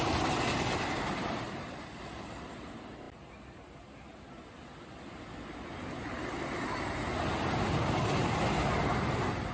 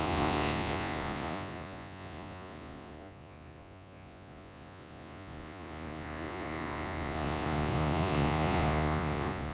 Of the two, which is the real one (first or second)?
first